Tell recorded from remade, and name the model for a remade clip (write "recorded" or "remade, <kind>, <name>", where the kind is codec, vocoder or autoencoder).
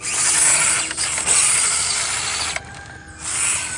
recorded